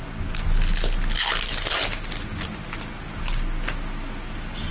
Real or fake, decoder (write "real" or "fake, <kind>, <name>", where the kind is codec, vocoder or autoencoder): real